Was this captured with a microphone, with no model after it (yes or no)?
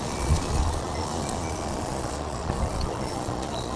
no